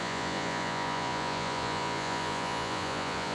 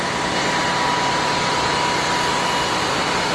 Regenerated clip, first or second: first